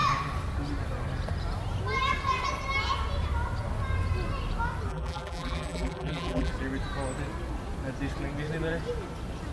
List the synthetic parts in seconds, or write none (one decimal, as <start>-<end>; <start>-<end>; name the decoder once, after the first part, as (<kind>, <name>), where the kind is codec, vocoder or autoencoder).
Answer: 4.9-6.5 (vocoder, BigVGAN v2)